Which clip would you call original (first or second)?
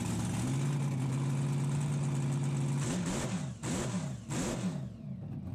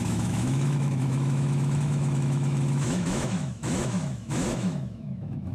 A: first